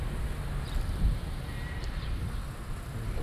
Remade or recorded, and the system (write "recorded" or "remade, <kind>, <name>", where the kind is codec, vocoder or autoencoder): recorded